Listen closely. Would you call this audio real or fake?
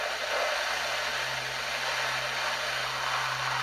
real